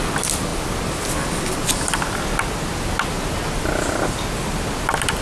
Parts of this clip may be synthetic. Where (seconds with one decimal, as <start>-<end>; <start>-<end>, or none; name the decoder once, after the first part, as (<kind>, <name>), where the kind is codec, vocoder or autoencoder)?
none